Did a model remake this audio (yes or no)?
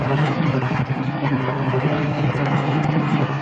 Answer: yes